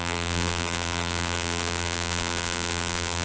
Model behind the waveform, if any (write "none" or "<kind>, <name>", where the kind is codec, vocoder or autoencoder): vocoder, BigVGAN v2